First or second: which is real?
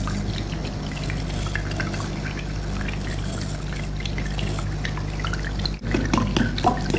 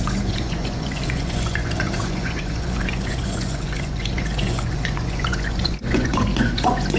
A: first